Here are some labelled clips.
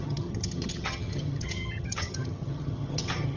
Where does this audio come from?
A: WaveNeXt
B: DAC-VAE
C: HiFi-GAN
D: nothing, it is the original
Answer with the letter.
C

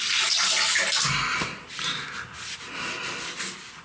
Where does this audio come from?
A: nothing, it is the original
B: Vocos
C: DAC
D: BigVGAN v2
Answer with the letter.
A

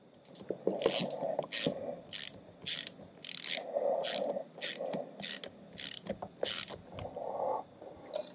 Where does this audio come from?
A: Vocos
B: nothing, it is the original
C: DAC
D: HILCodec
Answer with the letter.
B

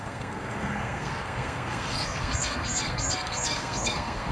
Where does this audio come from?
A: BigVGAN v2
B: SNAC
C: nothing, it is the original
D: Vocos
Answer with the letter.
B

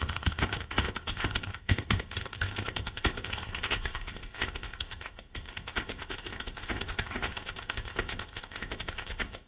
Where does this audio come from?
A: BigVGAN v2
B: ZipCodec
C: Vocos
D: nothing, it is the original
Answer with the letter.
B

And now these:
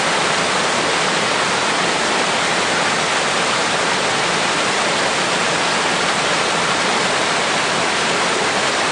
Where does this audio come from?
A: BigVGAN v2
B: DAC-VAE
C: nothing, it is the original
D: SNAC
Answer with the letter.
C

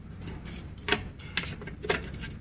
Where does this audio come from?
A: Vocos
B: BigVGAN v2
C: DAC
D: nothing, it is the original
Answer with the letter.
D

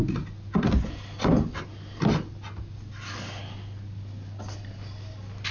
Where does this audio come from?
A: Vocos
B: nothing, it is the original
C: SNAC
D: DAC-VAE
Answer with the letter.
B